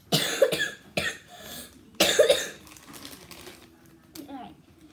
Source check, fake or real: real